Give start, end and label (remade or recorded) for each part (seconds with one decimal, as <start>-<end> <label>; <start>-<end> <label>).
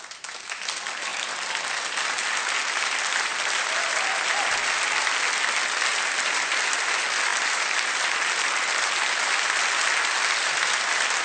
0.0-11.2 recorded